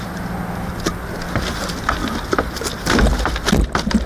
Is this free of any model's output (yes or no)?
yes